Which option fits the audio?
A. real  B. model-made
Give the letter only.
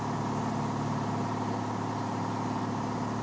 A